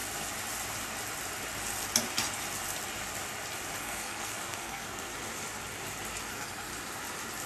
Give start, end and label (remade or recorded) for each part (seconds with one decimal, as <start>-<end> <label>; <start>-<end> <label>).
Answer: 0.0-3.8 recorded; 3.8-5.1 remade; 5.1-6.3 recorded; 6.3-6.7 remade; 6.7-7.5 recorded